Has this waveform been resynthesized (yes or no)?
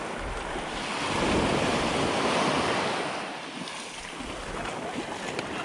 no